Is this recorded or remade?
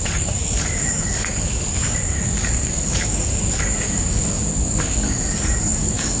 remade